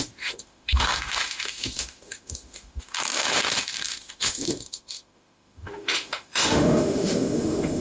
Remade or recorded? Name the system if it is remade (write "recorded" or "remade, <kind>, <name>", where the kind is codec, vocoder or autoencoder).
remade, autoencoder, DAC-VAE